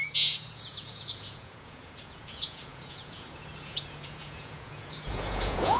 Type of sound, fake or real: fake